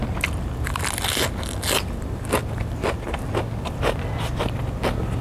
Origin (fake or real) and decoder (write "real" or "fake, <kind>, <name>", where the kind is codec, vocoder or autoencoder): real